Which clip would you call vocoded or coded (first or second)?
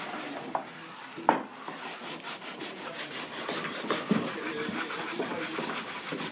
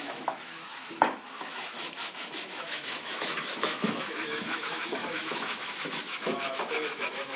second